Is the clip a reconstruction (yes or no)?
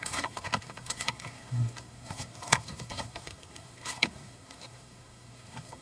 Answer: yes